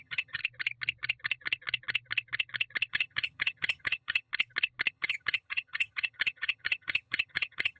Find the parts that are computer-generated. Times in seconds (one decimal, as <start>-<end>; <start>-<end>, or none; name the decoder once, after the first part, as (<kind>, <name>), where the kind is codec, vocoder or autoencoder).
0.0-0.4 (vocoder, HiFi-GAN); 2.9-4.3; 4.9-7.8